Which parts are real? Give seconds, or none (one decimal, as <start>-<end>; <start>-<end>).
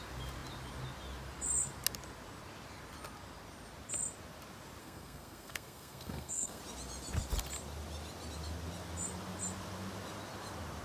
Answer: 0.0-4.8; 6.6-10.8